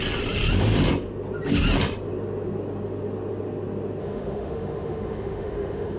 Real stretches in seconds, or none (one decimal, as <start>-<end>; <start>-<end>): 0.0-4.0